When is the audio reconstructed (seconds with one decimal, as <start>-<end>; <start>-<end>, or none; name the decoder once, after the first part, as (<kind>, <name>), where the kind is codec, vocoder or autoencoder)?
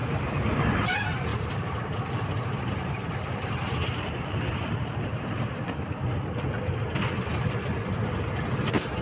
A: 1.3-6.5 (vocoder, BigVGAN v2)